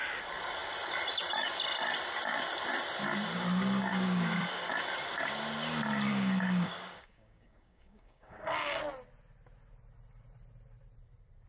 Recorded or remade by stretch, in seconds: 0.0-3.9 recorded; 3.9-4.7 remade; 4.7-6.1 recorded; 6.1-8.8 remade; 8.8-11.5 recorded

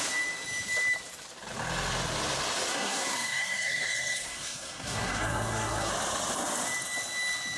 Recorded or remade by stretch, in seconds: 0.0-2.7 recorded; 2.7-5.9 remade; 5.9-7.6 recorded

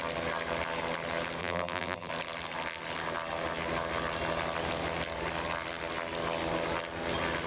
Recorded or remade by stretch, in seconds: 0.0-1.4 recorded; 1.4-2.1 remade; 2.1-7.5 recorded

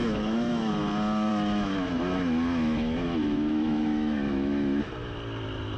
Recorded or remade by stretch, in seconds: 0.0-0.7 remade; 0.7-1.3 recorded; 1.3-4.8 remade; 4.8-5.8 recorded

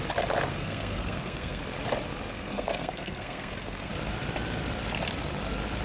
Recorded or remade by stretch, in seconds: 0.0-0.5 recorded; 0.5-1.6 remade; 1.6-2.3 recorded; 2.3-3.9 remade; 3.9-5.8 recorded